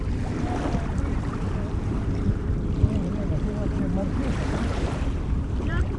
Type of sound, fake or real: fake